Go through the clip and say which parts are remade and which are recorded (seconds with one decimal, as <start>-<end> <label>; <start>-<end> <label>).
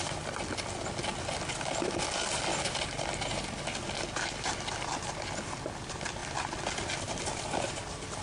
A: 0.0-8.2 recorded